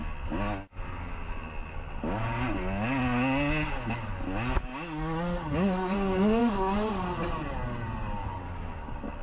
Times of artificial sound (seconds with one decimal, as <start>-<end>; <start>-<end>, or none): none

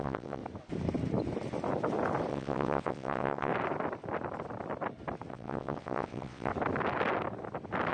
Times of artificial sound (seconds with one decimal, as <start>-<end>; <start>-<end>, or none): 0.0-0.4; 2.3-3.5; 5.3-6.5

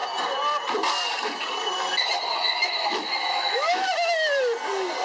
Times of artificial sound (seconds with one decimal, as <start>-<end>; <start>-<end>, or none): 2.6-3.9

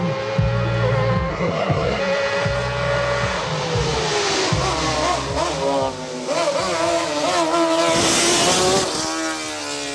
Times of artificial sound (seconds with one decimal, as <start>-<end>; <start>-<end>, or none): 1.3-2.0

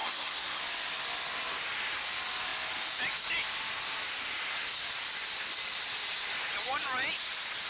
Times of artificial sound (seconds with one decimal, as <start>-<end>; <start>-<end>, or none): 0.0-0.6